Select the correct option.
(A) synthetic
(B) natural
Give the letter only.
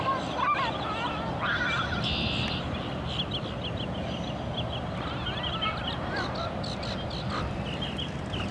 B